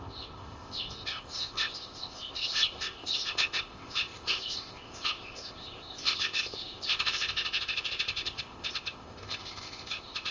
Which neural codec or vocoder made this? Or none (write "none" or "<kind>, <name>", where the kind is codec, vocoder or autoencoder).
codec, ZipCodec